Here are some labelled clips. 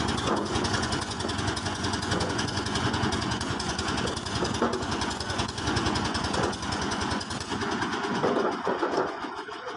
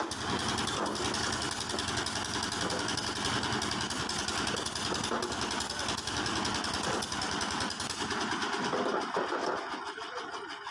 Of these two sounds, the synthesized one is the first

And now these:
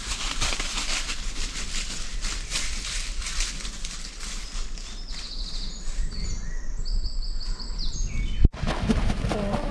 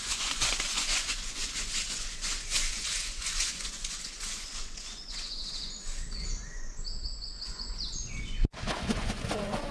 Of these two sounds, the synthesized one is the second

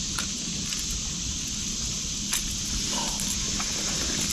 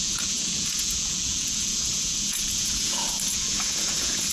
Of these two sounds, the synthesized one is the second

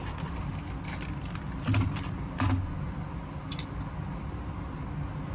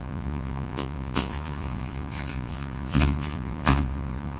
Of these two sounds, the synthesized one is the second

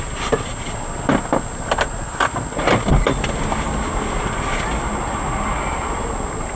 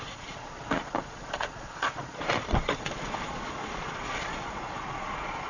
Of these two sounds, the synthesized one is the second